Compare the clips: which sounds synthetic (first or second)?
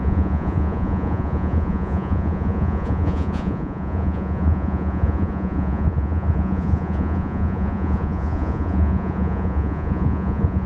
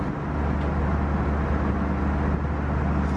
first